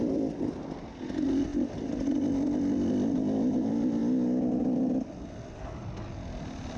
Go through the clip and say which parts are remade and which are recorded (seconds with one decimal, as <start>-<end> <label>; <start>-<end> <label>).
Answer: 0.0-6.8 recorded